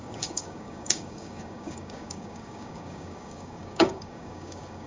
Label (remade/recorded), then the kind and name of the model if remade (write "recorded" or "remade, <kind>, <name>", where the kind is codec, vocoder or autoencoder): remade, codec, DAC